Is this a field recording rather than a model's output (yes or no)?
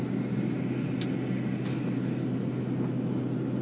yes